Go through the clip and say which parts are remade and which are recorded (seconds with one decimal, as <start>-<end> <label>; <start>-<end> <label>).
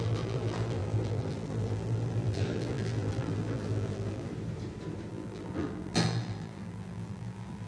0.0-4.3 remade; 4.3-5.1 recorded; 5.1-7.7 remade